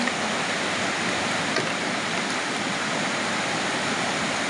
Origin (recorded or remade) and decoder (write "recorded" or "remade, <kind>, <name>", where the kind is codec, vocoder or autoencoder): recorded